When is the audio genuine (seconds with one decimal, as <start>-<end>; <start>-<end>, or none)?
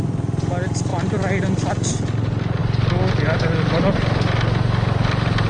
0.0-5.5